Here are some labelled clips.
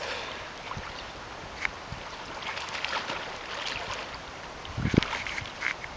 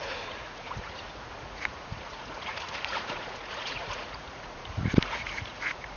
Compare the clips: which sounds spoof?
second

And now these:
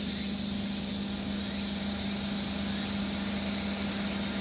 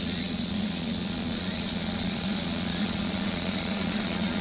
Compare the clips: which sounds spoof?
second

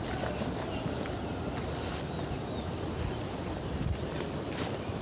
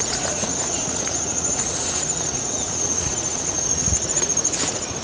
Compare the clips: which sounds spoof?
second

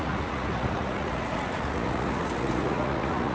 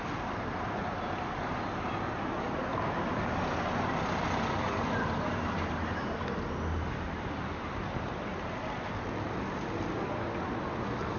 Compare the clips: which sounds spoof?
first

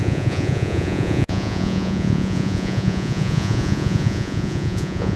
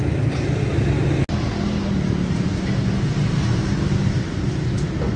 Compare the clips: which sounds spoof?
first